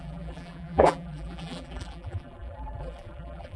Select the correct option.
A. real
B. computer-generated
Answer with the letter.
B